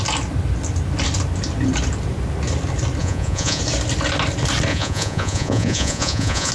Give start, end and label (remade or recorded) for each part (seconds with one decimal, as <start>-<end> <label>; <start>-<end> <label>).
0.0-3.0 recorded; 3.0-3.6 remade; 3.6-4.7 recorded; 4.7-6.5 remade